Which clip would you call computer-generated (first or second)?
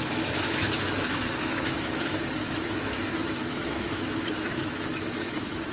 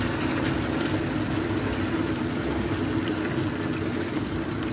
first